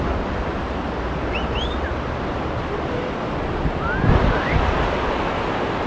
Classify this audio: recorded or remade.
recorded